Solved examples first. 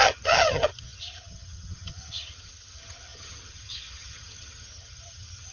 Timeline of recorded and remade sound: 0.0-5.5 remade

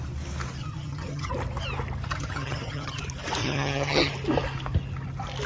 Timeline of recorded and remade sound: 0.0-0.6 recorded; 0.6-1.3 remade; 1.3-2.1 recorded; 2.1-3.0 remade; 3.0-3.4 recorded; 3.4-4.1 remade; 4.1-5.5 recorded

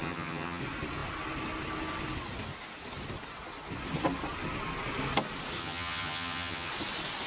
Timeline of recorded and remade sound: 0.0-0.6 remade; 0.6-5.6 recorded; 5.6-6.7 remade; 6.7-7.3 recorded

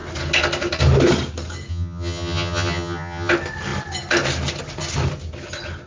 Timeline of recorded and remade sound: 0.0-1.7 recorded; 1.7-3.3 remade; 3.3-5.9 recorded

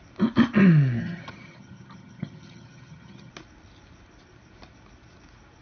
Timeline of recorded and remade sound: 0.0-1.0 recorded; 1.0-3.3 remade; 3.3-5.6 recorded

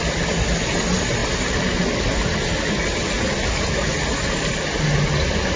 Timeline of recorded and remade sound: 0.0-5.6 recorded

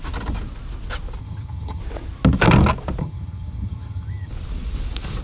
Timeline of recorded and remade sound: 0.0-1.2 recorded; 1.2-1.8 remade; 1.8-3.0 recorded; 3.0-4.3 remade; 4.3-5.2 recorded